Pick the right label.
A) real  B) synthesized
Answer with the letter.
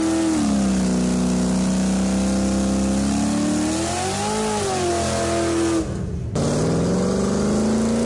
A